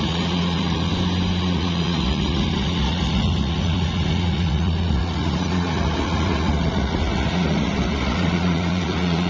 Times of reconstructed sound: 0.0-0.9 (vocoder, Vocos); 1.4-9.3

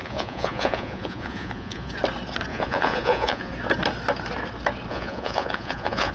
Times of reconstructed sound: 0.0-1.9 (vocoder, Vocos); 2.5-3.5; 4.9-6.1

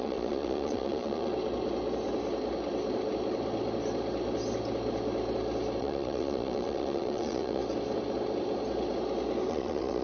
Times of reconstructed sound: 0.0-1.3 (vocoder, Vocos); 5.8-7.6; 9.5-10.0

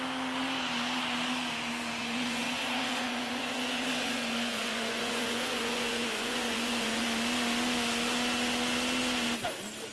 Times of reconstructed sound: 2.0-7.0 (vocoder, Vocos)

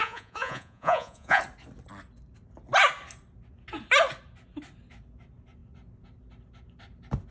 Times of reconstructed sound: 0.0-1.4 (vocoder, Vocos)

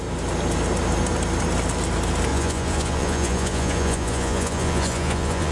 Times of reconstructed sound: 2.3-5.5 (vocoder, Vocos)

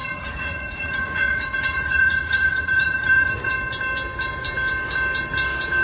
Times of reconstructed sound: 0.0-3.5 (vocoder, Vocos)